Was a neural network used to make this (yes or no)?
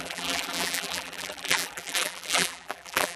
yes